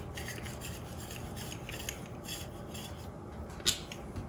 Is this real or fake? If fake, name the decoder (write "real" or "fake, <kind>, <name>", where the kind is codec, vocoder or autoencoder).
real